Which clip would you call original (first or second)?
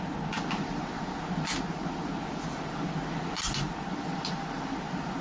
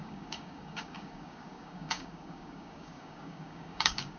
first